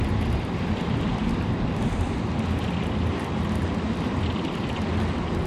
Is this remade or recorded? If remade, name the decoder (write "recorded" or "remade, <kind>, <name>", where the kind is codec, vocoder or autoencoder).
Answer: recorded